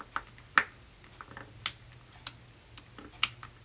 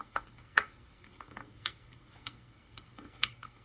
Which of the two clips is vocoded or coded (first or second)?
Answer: second